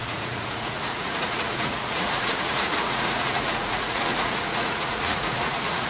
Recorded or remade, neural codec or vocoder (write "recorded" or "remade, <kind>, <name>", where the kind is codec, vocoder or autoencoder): remade, vocoder, Vocos